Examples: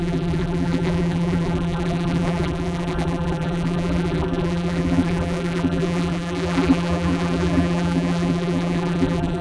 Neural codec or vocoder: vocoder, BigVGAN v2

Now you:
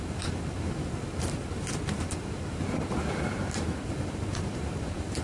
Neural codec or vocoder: vocoder, BigVGAN v2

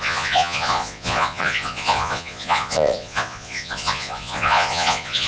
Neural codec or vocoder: vocoder, Vocos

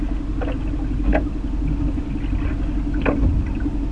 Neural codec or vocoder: none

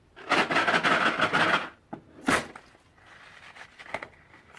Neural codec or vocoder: none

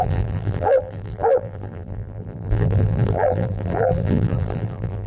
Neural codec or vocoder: vocoder, BigVGAN v2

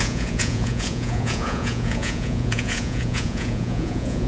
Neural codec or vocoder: vocoder, Vocos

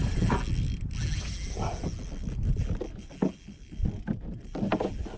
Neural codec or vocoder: none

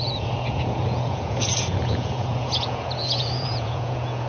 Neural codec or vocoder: vocoder, Vocos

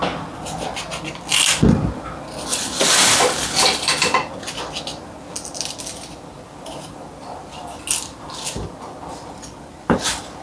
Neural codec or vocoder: none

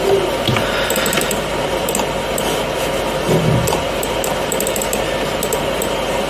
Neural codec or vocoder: none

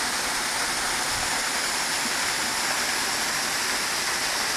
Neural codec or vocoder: none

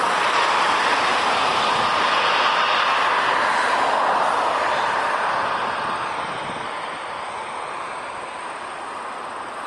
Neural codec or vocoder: none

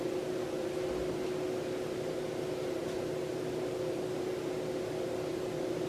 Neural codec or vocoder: none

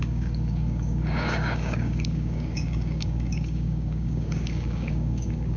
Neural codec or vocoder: codec, DAC